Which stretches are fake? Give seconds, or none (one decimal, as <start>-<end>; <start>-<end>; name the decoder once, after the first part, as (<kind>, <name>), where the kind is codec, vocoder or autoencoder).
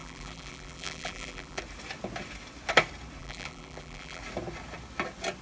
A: 0.0-1.6 (vocoder, BigVGAN v2); 3.2-4.2